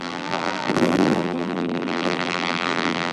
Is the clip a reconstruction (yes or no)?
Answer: yes